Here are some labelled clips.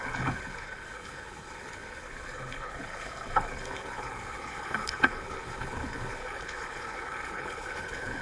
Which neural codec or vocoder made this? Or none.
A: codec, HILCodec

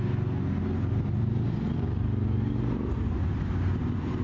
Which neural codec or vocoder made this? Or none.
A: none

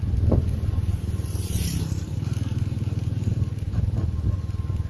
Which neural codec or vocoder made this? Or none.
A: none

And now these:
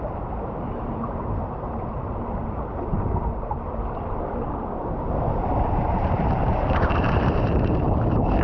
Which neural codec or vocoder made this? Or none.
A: vocoder, BigVGAN v2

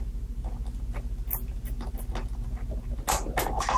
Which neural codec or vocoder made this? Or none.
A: none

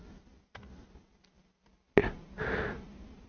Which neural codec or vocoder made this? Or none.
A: none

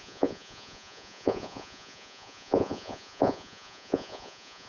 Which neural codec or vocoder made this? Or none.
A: vocoder, Vocos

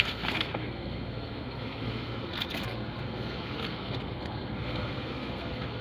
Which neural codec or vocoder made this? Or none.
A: codec, SNAC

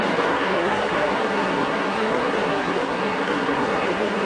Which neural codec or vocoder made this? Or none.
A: codec, SNAC